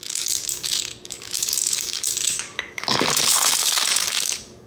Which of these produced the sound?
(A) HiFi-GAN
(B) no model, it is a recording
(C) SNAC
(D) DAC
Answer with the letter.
D